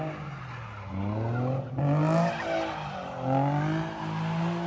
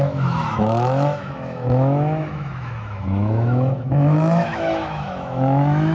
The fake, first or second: second